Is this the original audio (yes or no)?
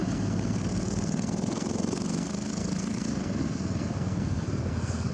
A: no